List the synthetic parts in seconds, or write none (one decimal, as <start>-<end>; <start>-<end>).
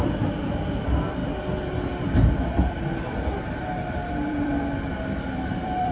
0.0-1.2; 4.3-5.9